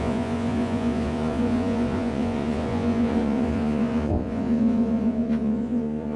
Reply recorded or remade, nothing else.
remade